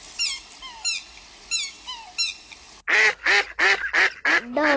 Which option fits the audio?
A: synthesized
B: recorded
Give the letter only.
B